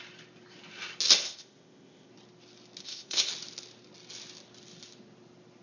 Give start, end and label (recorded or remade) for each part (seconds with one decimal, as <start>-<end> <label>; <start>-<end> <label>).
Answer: 0.0-1.2 recorded; 1.2-2.1 remade; 2.1-2.8 recorded; 2.8-3.3 remade; 3.3-5.6 recorded